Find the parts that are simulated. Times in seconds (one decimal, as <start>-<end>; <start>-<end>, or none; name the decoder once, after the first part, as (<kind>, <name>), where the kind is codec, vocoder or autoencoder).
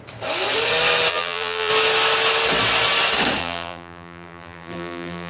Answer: 1.1-1.7 (vocoder, BigVGAN v2); 3.4-5.3